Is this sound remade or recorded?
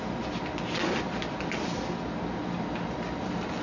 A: recorded